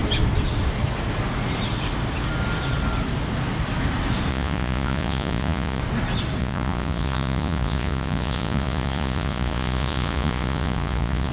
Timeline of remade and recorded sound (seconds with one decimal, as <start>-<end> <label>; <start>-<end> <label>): 0.0-4.3 recorded; 4.3-5.8 remade; 5.8-6.4 recorded; 6.4-11.3 remade

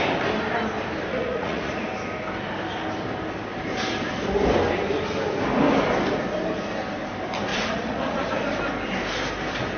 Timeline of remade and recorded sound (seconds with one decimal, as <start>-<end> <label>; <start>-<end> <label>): 0.0-1.1 recorded; 1.1-1.7 remade; 1.7-7.5 recorded; 7.5-8.3 remade; 8.3-9.8 recorded

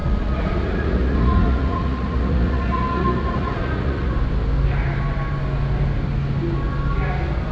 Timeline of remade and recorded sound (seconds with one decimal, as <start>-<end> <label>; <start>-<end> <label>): 0.0-4.1 remade; 4.1-7.5 recorded

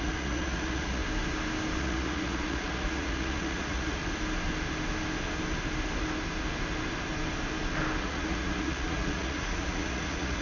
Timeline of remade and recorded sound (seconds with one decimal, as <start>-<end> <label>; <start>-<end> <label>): 0.0-1.0 remade; 1.0-1.8 recorded; 1.8-4.0 remade; 4.0-8.0 recorded; 8.0-10.4 remade

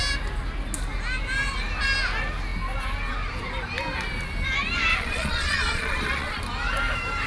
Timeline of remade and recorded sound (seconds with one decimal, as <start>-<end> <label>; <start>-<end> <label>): 0.0-4.9 recorded; 4.9-6.4 remade; 6.4-7.3 recorded

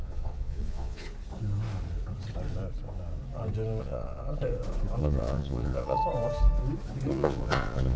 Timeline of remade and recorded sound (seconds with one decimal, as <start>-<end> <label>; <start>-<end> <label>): 0.0-1.1 remade; 1.1-3.8 recorded; 3.8-4.2 remade; 4.2-5.0 recorded; 5.0-6.0 remade; 6.0-7.1 recorded; 7.1-8.0 remade